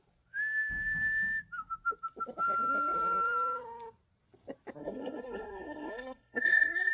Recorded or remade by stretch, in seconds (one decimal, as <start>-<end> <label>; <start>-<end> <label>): 0.0-4.8 recorded; 4.8-6.9 remade

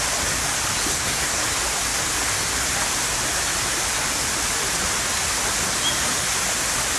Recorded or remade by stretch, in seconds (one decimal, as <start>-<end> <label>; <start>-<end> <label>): 0.0-0.9 recorded; 0.9-1.4 remade; 1.4-7.0 recorded

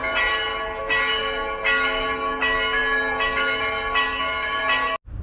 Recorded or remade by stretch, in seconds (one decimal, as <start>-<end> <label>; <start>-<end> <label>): 0.0-5.2 recorded

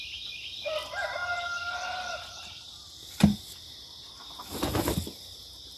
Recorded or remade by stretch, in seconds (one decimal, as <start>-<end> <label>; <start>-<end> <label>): 0.0-5.8 recorded

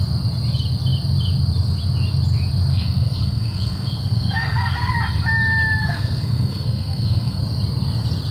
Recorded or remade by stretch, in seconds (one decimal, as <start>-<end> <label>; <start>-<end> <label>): 0.0-2.7 recorded; 2.7-4.9 remade; 4.9-5.8 recorded; 5.8-7.4 remade; 7.4-8.3 recorded

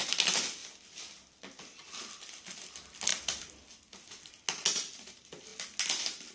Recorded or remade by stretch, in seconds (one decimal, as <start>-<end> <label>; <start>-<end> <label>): 0.0-6.3 recorded